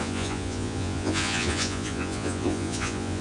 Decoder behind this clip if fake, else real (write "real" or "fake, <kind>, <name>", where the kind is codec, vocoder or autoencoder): fake, vocoder, Vocos